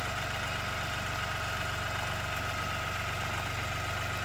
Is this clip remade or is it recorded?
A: recorded